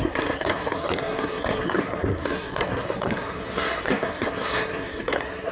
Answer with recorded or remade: remade